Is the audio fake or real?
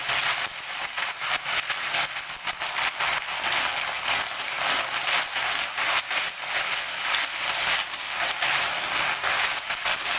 real